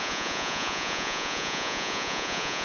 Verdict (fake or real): fake